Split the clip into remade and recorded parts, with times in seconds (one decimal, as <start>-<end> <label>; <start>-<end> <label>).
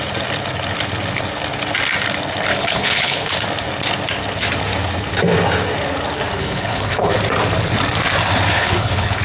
0.0-2.5 recorded; 2.5-3.3 remade; 3.3-6.4 recorded; 6.4-7.1 remade; 7.1-8.5 recorded; 8.5-9.2 remade